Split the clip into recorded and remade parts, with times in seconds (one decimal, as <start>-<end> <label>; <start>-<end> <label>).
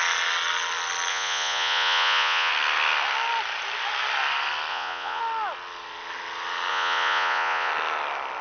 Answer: 0.0-1.1 recorded; 1.1-2.5 remade; 2.5-4.7 recorded; 4.7-5.2 remade; 5.2-6.7 recorded; 6.7-7.7 remade; 7.7-8.4 recorded